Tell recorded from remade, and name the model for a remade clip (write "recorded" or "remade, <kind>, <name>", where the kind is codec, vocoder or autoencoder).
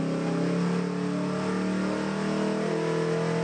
recorded